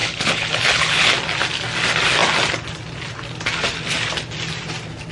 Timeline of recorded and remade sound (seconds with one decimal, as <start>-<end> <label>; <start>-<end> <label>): 0.0-1.1 remade; 1.1-5.1 recorded